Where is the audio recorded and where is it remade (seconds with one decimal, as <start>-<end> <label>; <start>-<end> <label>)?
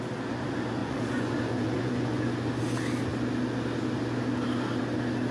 0.0-0.8 recorded; 0.8-2.3 remade; 2.3-5.3 recorded